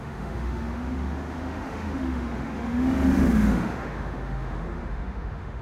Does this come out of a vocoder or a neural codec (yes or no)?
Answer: yes